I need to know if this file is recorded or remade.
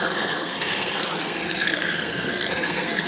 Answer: remade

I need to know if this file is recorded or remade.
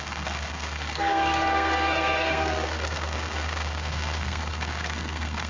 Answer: remade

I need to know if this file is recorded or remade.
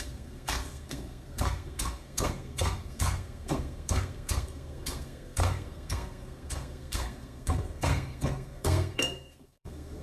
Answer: remade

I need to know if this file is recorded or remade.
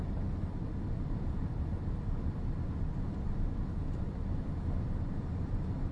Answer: recorded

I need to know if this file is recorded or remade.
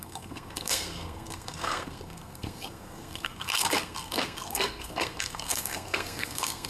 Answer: remade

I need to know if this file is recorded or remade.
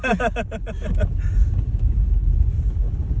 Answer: recorded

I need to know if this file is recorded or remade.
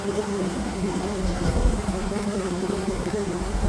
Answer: remade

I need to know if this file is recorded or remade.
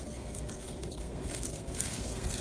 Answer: remade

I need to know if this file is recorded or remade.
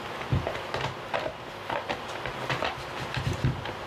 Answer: recorded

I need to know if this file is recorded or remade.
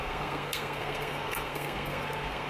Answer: remade